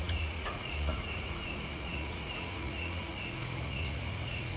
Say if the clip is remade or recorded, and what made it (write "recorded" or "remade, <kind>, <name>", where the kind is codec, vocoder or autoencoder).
remade, vocoder, Vocos